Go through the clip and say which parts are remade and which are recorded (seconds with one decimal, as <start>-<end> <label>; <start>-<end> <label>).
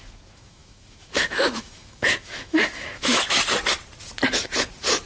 0.0-3.4 remade; 3.4-5.1 recorded